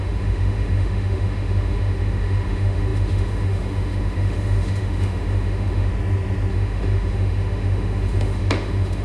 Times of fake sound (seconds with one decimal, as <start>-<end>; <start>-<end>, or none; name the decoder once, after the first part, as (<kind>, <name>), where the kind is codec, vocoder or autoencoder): 0.0-5.9 (autoencoder, DAC-VAE); 6.5-9.0